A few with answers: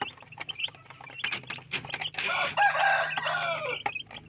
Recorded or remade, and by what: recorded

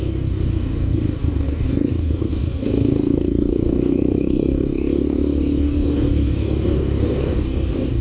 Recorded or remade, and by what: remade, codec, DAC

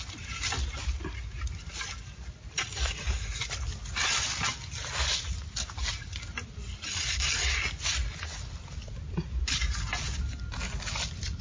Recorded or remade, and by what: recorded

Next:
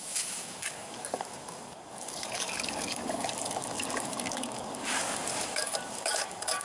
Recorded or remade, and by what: remade, codec, DAC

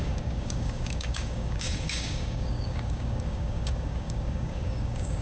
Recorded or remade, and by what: remade, codec, DAC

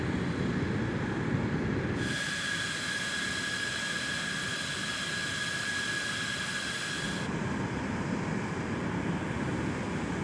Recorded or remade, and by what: recorded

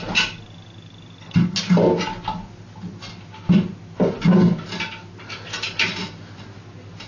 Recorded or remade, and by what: recorded